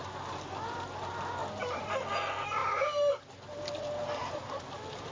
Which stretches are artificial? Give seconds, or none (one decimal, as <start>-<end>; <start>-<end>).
1.4-2.0; 2.6-3.3; 4.2-5.1